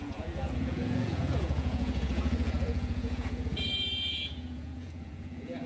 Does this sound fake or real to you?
fake